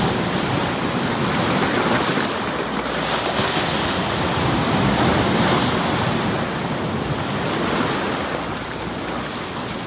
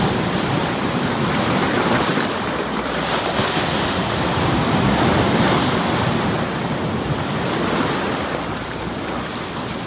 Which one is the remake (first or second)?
second